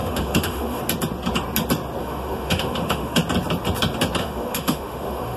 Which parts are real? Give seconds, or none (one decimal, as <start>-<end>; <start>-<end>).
0.8-2.0; 3.2-4.2